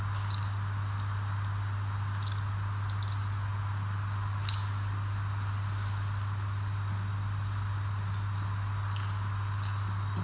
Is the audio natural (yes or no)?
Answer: yes